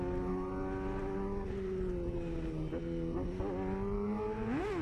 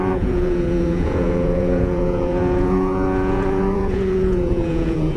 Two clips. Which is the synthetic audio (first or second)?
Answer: second